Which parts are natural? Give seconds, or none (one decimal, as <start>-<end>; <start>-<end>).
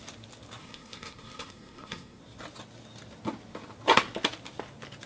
0.0-0.6; 2.2-5.1